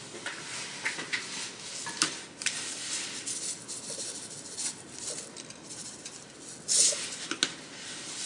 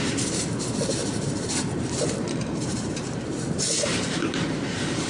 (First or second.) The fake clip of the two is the second